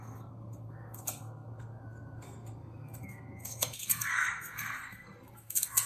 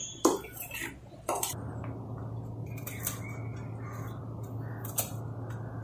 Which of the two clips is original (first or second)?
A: second